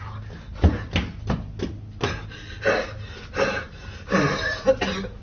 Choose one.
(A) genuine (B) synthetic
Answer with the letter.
A